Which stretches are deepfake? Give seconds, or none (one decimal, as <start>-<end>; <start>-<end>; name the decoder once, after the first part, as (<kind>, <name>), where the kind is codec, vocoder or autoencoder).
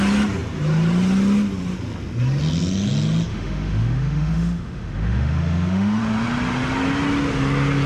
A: 3.3-6.0 (autoencoder, DAC-VAE)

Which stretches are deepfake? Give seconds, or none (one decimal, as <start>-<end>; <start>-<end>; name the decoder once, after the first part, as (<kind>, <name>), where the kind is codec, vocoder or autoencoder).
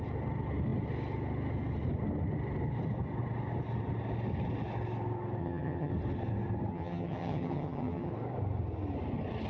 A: 5.4-5.9 (vocoder, HiFi-GAN); 6.7-8.1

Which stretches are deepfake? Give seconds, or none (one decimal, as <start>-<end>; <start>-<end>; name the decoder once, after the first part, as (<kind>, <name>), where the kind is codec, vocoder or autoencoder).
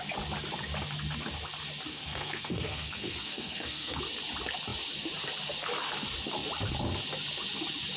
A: 1.9-4.0 (codec, SNAC)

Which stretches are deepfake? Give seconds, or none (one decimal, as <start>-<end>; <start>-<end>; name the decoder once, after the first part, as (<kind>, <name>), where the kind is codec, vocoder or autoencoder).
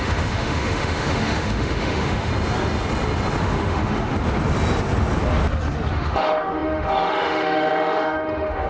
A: 0.0-2.3 (autoencoder, DAC-VAE); 3.4-4.1; 5.9-8.7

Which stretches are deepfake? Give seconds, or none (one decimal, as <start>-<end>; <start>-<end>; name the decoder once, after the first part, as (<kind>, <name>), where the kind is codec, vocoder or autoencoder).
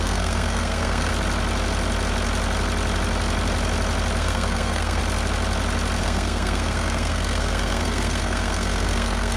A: 0.0-1.1 (codec, SNAC); 4.2-5.0; 6.0-9.4